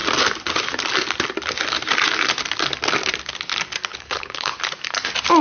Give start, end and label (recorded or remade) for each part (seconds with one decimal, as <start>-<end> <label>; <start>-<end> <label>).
0.0-3.9 recorded; 3.9-4.6 remade; 4.6-5.4 recorded